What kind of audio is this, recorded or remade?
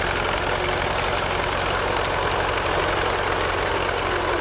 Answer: recorded